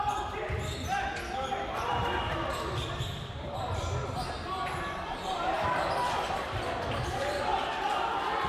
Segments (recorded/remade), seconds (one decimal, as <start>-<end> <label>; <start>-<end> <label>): 0.0-8.5 remade

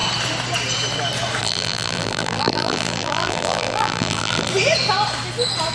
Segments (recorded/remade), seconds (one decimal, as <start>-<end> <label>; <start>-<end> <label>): 0.0-1.4 recorded; 1.4-4.5 remade; 4.5-5.7 recorded